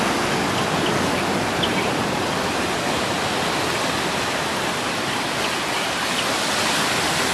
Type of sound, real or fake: real